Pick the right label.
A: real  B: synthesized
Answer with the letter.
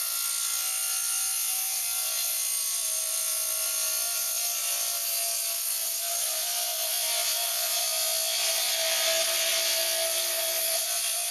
A